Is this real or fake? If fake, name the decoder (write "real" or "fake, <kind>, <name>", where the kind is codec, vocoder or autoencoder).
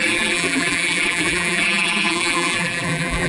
fake, vocoder, BigVGAN v2